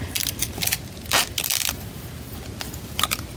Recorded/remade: recorded